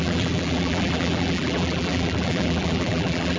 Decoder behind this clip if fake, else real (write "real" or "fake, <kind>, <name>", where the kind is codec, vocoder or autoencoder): fake, vocoder, BigVGAN v2